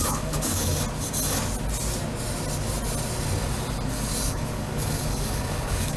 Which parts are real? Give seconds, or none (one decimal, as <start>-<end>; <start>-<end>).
0.7-4.3